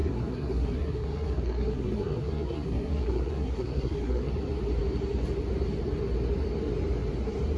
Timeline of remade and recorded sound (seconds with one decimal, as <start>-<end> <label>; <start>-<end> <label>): 0.0-4.3 remade; 4.3-7.6 recorded